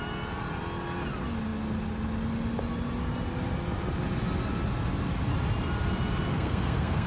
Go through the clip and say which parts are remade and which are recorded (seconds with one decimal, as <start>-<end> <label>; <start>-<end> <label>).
0.0-6.3 recorded; 6.3-7.1 remade